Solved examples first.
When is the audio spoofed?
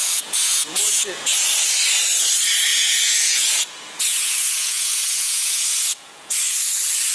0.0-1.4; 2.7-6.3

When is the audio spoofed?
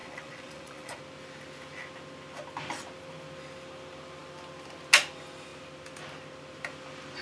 0.0-1.0